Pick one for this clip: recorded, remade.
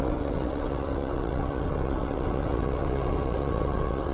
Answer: remade